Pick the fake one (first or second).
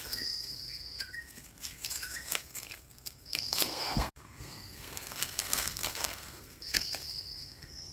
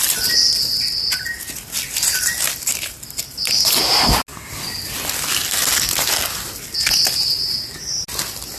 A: first